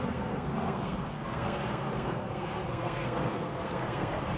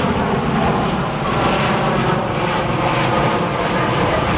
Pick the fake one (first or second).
first